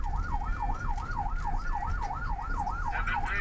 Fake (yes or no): no